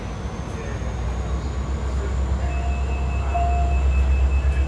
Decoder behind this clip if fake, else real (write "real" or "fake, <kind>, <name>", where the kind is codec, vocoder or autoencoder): real